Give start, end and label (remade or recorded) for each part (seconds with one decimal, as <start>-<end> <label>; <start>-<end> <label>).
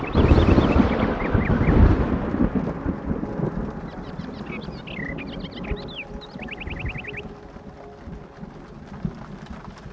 0.0-9.9 recorded